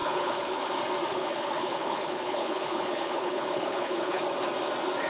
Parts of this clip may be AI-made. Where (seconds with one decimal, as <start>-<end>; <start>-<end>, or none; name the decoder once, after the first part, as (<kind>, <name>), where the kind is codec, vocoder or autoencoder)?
0.0-0.7 (codec, HILCodec); 1.1-4.2

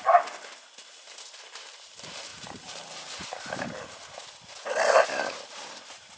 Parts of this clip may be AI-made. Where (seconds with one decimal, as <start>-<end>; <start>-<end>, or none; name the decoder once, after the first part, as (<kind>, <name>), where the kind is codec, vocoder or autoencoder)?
none

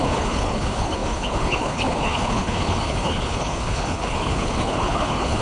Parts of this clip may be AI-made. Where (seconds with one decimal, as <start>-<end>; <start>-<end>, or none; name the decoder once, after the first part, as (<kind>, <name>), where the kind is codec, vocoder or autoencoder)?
0.0-5.4 (codec, HILCodec)

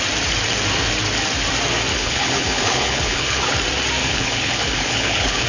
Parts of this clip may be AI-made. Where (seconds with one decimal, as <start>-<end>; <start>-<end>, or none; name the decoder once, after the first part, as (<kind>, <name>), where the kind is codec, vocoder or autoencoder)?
1.9-3.6 (codec, HILCodec); 4.0-5.5

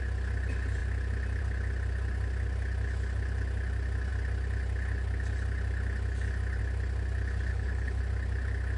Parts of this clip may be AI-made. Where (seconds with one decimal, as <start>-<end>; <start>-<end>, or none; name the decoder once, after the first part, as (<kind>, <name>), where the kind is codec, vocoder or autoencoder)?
7.5-8.0 (codec, HILCodec)